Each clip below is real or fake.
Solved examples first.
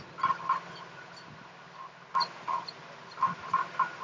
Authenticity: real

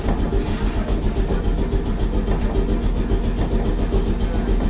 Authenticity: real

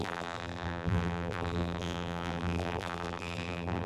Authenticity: fake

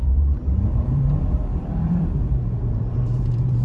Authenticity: fake